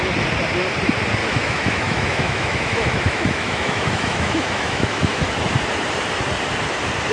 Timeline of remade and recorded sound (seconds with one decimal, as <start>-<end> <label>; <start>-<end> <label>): 0.0-1.2 recorded; 1.2-5.2 remade; 5.2-7.1 recorded